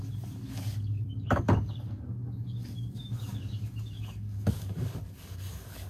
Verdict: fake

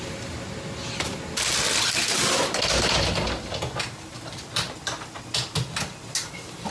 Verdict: real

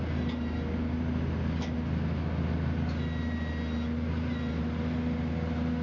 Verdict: real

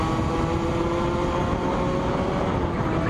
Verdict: real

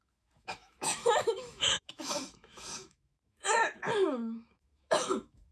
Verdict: fake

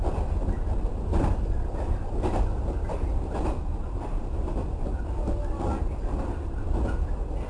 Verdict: real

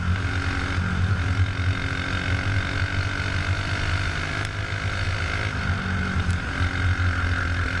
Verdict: real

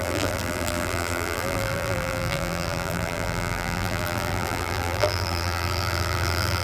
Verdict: fake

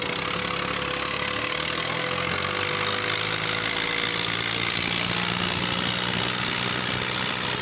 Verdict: real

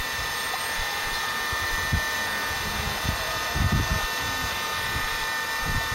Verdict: fake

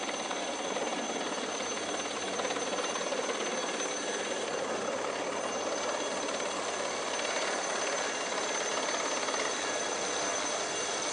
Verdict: real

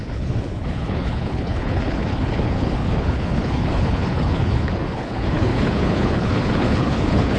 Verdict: fake